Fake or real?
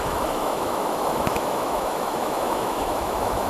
fake